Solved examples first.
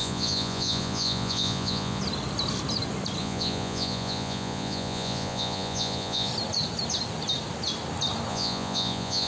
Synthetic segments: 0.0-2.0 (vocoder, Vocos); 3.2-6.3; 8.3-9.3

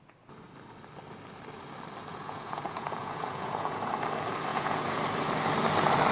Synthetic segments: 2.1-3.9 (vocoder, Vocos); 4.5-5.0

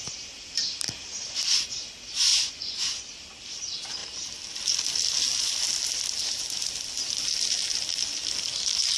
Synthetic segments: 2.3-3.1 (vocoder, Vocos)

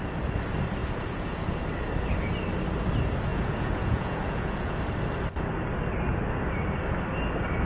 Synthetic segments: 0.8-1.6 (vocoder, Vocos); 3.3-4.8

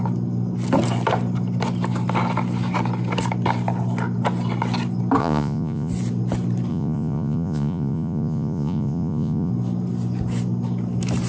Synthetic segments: 5.2-5.9 (vocoder, Vocos); 6.7-9.5

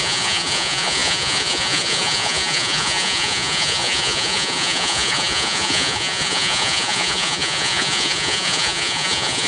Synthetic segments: 0.0-9.5 (vocoder, Vocos)

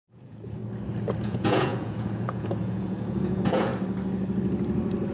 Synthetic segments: 0.0-0.6 (vocoder, Vocos); 1.2-3.7